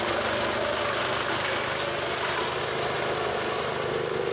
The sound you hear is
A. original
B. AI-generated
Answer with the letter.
A